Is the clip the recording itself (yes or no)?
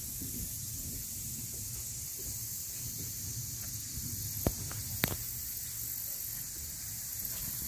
yes